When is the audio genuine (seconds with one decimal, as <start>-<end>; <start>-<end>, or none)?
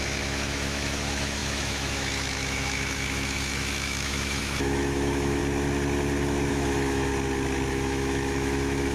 5.4-6.5; 7.1-7.7